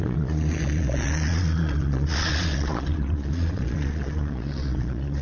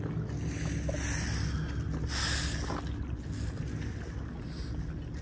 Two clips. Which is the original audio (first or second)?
second